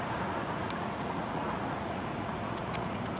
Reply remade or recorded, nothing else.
remade